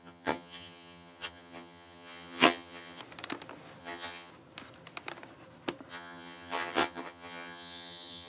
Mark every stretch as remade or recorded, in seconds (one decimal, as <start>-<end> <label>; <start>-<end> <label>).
0.0-3.0 remade; 3.0-3.8 recorded; 3.8-4.3 remade; 4.3-5.9 recorded; 5.9-8.3 remade